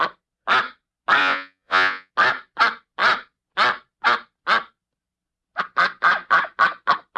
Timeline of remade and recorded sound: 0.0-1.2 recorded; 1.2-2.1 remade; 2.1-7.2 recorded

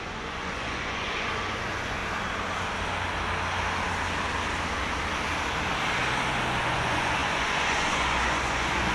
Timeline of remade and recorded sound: 0.0-2.0 remade; 2.0-6.6 recorded; 6.6-8.9 remade

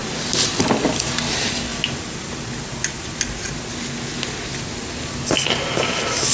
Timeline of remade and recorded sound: 0.0-6.3 recorded

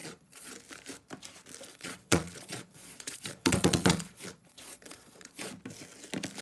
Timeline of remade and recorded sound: 0.0-0.5 remade; 0.5-1.7 recorded; 1.7-5.5 remade; 5.5-6.4 recorded